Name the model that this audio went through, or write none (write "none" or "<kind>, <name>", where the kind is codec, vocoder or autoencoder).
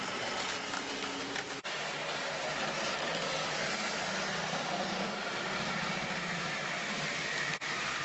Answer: none